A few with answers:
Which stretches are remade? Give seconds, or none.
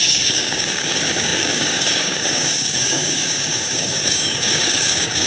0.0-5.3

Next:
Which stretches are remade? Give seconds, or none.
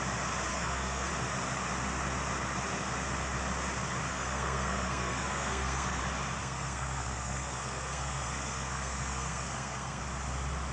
0.5-1.1; 4.1-6.0; 6.4-10.0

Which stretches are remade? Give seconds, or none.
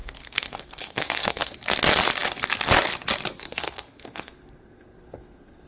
0.0-1.5; 3.3-5.7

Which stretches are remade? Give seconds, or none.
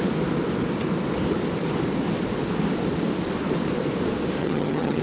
4.4-5.0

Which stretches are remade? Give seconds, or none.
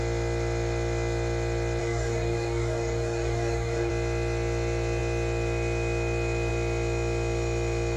1.8-3.9